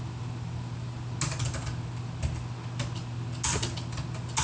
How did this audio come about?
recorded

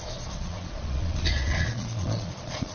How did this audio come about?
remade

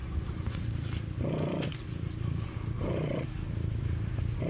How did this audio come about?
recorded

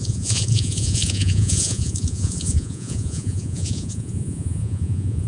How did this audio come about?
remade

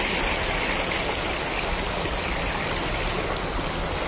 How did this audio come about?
recorded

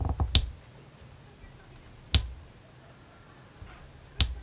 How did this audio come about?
recorded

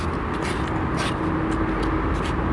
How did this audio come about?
recorded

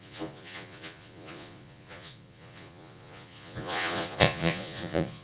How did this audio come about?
remade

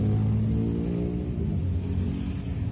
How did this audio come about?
recorded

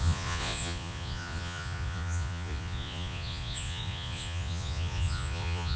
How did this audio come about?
remade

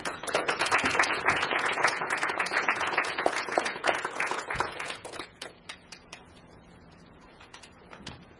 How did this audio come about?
remade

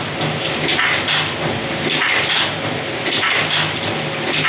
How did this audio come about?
recorded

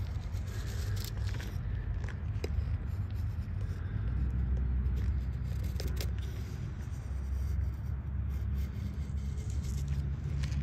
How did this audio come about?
recorded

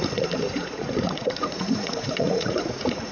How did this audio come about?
remade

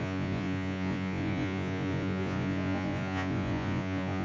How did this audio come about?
remade